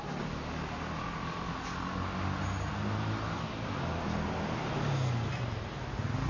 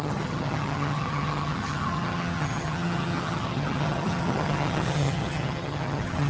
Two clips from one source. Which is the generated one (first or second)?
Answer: second